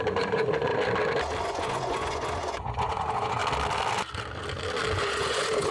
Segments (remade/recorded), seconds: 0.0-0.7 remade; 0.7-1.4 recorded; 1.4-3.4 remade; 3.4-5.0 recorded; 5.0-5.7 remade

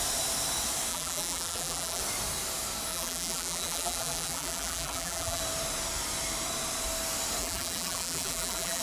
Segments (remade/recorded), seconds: 0.0-0.9 recorded; 0.9-2.0 remade; 2.0-2.9 recorded; 2.9-5.4 remade; 5.4-7.4 recorded; 7.4-8.8 remade

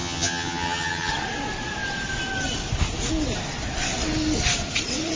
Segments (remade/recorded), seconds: 0.0-1.1 remade; 1.1-5.2 recorded